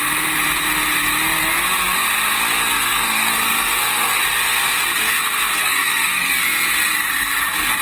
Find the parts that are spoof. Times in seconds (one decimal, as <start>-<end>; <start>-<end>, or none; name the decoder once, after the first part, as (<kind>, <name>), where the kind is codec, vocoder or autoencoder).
2.7-4.2 (codec, SNAC); 5.6-6.3